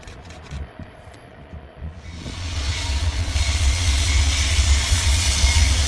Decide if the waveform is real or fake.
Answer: fake